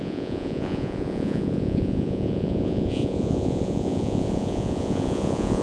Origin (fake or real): fake